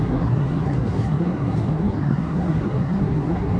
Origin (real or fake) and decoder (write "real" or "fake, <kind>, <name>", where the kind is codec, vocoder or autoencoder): fake, codec, SNAC